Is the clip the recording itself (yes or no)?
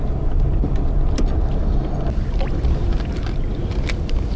yes